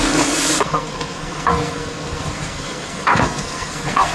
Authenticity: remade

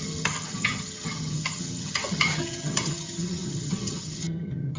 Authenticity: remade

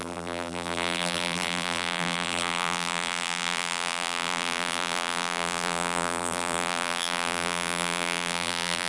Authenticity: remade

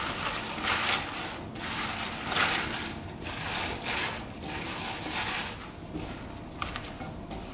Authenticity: recorded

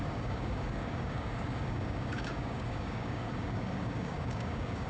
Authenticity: remade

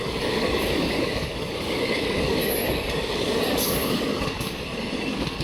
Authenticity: remade